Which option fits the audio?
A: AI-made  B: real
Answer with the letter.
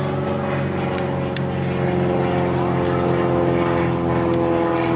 B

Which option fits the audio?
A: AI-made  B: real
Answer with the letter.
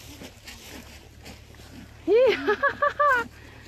B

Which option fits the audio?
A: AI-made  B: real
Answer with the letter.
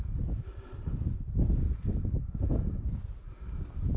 B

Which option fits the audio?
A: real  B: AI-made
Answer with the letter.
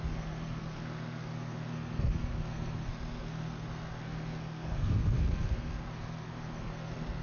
B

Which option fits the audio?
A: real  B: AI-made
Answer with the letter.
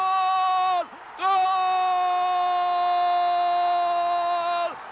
A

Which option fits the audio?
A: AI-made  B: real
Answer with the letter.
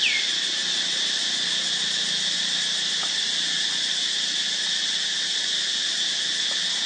B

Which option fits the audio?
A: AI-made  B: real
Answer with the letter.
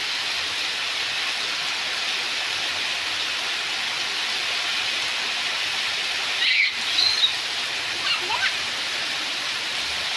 B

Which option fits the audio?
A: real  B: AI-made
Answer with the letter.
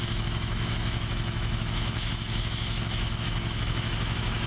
B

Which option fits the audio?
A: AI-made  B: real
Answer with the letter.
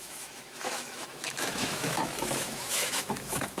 A